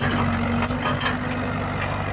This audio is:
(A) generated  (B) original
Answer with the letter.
B